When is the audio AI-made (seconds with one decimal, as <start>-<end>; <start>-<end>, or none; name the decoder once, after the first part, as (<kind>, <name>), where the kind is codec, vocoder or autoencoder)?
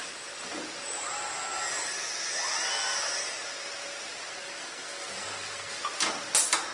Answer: 4.3-5.8 (codec, SNAC)